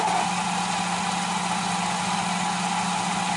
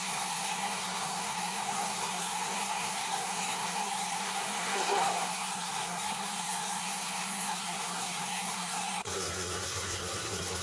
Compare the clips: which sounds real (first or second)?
first